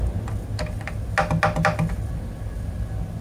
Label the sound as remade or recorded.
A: recorded